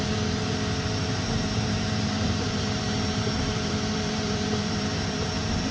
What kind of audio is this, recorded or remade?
remade